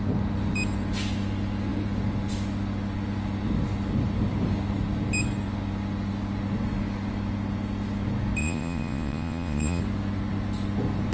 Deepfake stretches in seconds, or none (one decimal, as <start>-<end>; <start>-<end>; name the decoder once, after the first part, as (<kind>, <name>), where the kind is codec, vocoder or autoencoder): 8.4-9.8 (vocoder, Vocos)